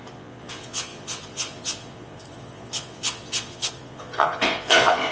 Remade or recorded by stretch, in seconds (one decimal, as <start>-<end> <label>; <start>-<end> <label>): 0.0-5.1 remade